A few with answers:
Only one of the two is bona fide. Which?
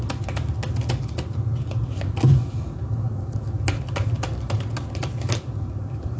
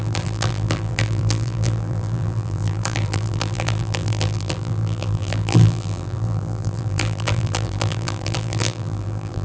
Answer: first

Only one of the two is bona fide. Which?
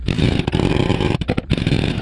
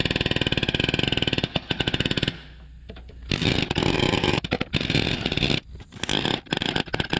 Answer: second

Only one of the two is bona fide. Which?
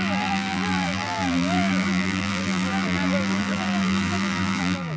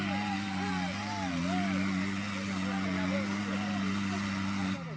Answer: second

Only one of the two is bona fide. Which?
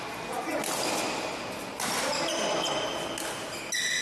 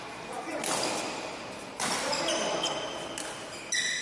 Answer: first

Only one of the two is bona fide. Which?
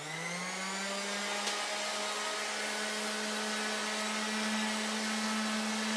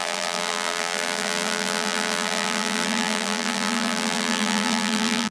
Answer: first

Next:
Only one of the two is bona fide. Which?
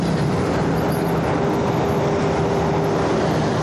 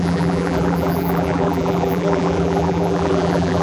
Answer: first